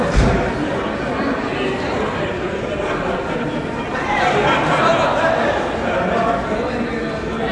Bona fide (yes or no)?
yes